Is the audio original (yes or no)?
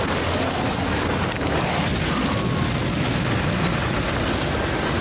yes